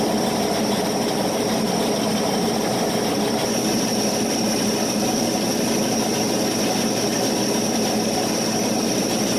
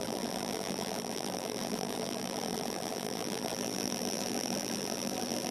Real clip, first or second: first